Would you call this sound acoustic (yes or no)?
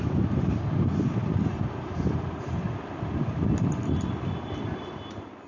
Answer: yes